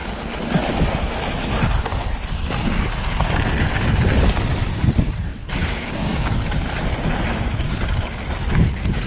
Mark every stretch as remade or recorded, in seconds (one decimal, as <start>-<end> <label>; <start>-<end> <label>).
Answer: 0.0-5.6 recorded; 5.6-6.3 remade; 6.3-9.1 recorded